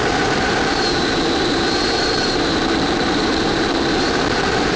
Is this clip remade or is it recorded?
remade